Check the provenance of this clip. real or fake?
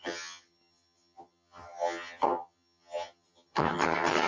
fake